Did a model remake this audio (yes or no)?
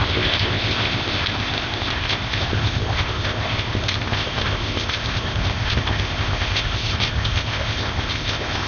yes